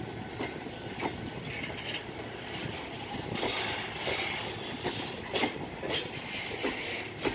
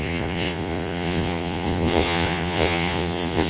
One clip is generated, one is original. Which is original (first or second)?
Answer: first